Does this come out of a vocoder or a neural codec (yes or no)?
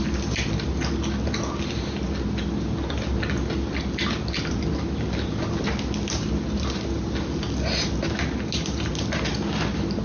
no